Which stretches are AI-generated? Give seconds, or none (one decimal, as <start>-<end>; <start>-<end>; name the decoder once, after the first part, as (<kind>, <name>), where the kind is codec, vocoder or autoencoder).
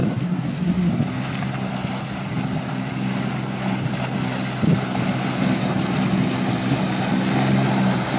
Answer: 0.0-0.9 (codec, SNAC)